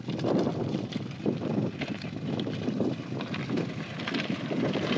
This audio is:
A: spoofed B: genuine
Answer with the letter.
B